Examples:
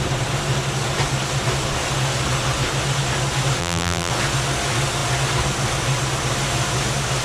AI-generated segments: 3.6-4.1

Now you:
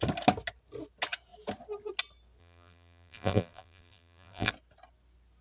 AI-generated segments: 2.4-4.5

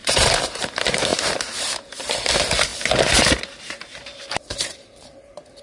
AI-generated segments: 0.0-2.7; 3.6-5.6

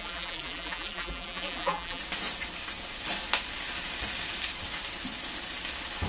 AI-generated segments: 0.0-2.0

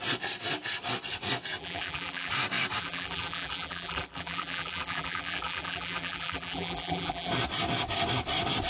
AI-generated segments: 1.6-2.3; 2.8-7.3

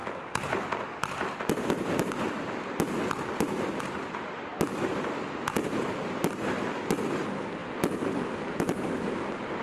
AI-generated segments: 0.0-3.8

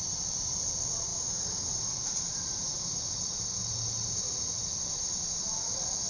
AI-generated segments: none

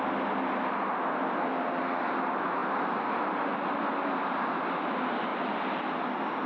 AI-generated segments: 5.3-5.8